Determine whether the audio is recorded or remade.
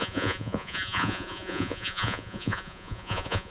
remade